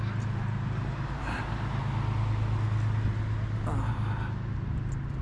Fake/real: real